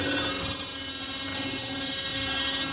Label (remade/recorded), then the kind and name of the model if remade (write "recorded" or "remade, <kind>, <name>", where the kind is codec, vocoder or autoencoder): recorded